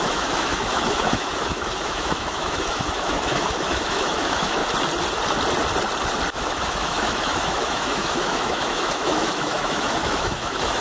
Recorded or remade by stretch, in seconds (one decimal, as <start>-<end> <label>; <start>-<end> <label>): 0.0-4.6 remade; 4.6-6.3 recorded; 6.3-10.8 remade